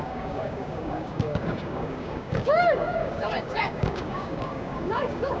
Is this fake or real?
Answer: fake